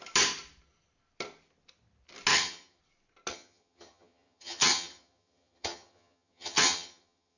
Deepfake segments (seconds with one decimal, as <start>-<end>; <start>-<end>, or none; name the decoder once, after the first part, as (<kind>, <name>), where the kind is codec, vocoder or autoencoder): 2.3-2.8 (vocoder, HiFi-GAN); 3.3-7.4